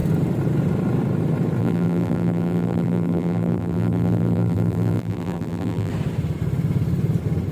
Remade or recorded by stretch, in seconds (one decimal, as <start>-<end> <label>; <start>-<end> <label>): 0.0-1.6 recorded; 1.6-5.9 remade; 5.9-7.5 recorded